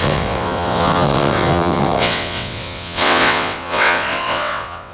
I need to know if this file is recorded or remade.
remade